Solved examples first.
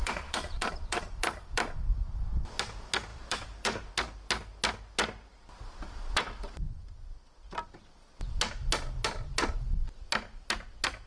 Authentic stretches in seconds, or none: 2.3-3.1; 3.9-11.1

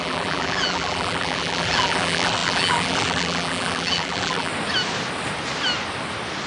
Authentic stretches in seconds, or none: 4.5-6.5

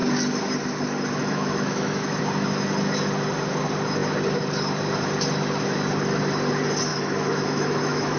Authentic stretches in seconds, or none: 0.0-1.2; 2.2-6.9

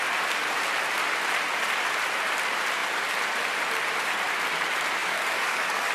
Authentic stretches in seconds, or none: 0.0-5.0